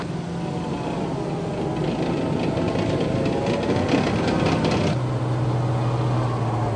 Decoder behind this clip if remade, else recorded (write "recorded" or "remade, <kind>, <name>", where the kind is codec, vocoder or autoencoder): recorded